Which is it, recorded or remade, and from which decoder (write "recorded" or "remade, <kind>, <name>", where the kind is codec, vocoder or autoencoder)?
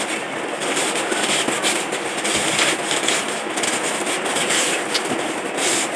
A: recorded